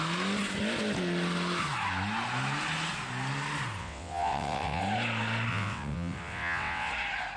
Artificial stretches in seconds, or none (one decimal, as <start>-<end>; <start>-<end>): 3.8-4.8; 5.5-6.9